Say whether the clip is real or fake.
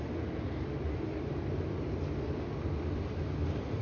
real